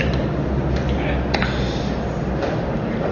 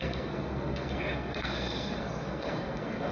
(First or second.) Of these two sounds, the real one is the first